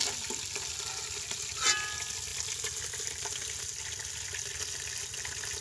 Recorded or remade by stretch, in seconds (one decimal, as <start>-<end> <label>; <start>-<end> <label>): 0.0-5.6 recorded